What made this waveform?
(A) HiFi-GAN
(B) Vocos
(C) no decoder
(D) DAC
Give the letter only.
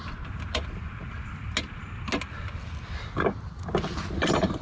C